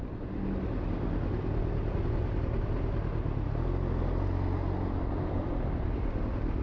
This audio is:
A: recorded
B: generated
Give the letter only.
A